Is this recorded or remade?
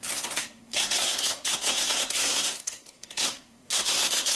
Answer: remade